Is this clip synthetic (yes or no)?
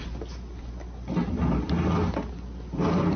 no